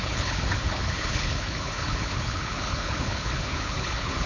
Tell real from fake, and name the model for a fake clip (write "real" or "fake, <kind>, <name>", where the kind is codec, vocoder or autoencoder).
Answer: fake, codec, HILCodec